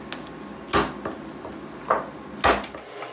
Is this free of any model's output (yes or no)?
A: yes